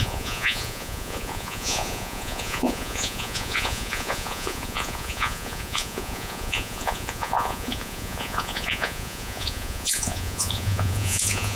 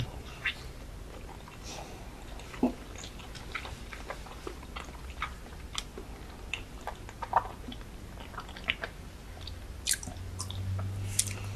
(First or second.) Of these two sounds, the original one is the second